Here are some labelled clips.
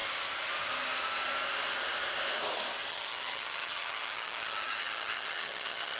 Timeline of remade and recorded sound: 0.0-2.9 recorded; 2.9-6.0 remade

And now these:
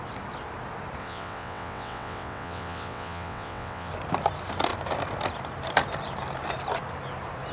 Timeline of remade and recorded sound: 0.0-1.0 recorded; 1.0-3.9 remade; 3.9-7.5 recorded

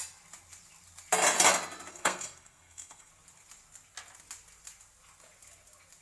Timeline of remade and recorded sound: 0.0-1.9 recorded; 1.9-3.1 remade; 3.1-6.0 recorded